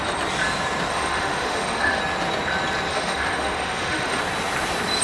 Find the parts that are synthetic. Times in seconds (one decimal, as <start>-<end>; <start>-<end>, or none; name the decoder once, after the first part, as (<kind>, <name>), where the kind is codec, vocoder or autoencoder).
0.9-2.0 (autoencoder, DAC-VAE); 2.9-4.2